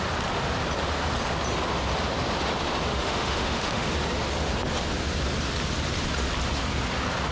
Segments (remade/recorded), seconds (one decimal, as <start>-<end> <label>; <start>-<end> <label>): 0.0-2.9 recorded; 2.9-3.9 remade; 3.9-7.3 recorded